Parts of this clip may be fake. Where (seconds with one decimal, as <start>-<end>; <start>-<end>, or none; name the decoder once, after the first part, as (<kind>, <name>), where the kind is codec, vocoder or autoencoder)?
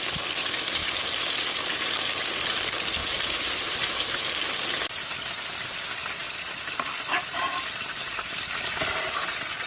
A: 6.2-9.7 (vocoder, BigVGAN v2)